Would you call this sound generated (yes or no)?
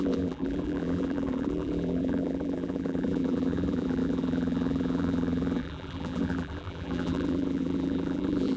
yes